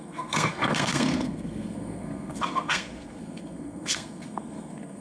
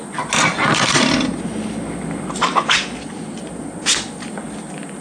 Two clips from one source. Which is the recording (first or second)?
second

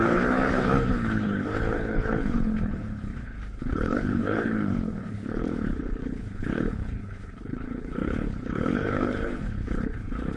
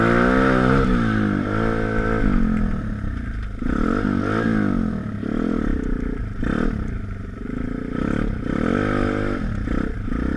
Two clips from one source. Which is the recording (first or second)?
second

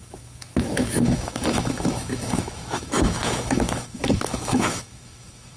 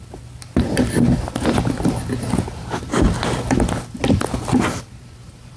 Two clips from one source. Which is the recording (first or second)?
second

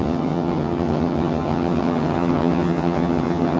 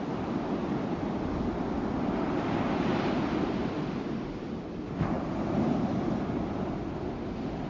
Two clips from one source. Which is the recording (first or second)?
second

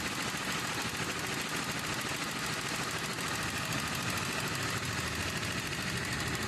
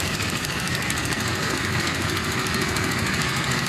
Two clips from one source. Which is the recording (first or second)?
first